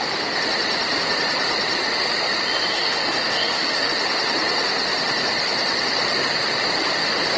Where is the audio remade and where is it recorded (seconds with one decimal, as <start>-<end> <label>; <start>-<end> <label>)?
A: 0.0-2.7 recorded; 2.7-3.9 remade; 3.9-7.4 recorded